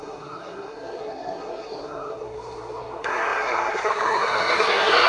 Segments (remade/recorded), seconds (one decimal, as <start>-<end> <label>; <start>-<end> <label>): 0.0-5.1 remade